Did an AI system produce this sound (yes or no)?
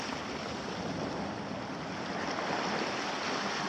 no